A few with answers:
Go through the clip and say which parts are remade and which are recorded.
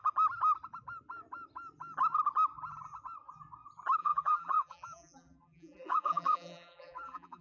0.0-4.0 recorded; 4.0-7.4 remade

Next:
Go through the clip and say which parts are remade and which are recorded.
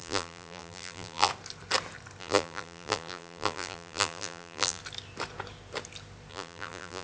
0.0-1.3 remade; 1.3-2.2 recorded; 2.2-4.8 remade; 4.8-6.3 recorded; 6.3-7.0 remade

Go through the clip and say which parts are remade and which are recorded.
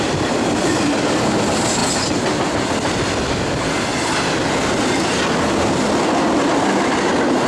0.0-1.8 remade; 1.8-6.3 recorded; 6.3-7.5 remade